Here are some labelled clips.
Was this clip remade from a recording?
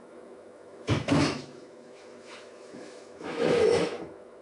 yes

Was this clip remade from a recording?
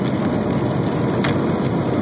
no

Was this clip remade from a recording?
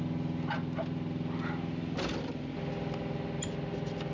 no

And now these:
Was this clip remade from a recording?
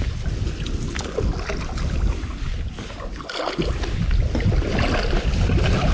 no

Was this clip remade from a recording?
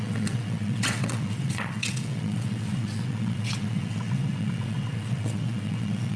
yes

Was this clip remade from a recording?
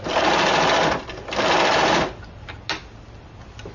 no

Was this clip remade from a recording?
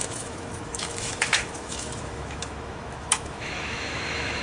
yes